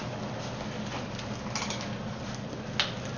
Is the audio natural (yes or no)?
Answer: yes